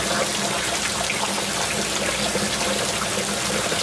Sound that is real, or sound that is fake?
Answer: real